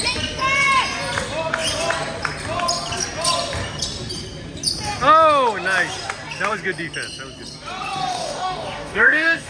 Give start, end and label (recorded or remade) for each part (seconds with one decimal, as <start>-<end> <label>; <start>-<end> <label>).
0.0-8.1 recorded; 8.1-9.5 remade

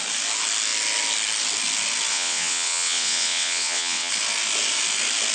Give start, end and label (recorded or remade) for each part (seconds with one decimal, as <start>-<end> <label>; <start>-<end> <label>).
0.0-2.1 recorded; 2.1-4.1 remade; 4.1-5.3 recorded

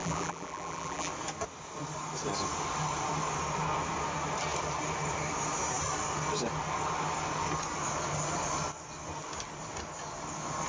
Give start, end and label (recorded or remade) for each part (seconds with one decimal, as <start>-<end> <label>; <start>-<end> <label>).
0.0-1.1 remade; 1.1-10.7 recorded

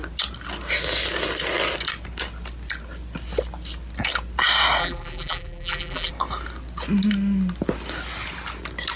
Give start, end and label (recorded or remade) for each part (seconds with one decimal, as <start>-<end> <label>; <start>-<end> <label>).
0.0-4.8 recorded; 4.8-6.1 remade; 6.1-9.0 recorded

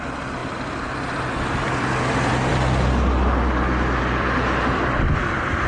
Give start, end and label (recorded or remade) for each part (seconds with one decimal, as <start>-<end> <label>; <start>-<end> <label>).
0.0-0.4 remade; 0.4-1.5 recorded; 1.5-2.5 remade; 2.5-4.0 recorded; 4.0-5.7 remade

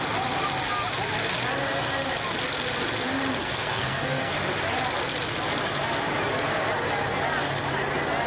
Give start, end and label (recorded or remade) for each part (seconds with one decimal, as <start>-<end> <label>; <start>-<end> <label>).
0.0-3.4 recorded; 3.4-4.3 remade; 4.3-8.3 recorded